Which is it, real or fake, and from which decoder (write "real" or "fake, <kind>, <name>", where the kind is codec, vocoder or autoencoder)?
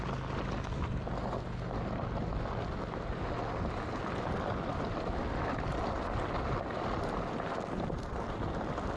real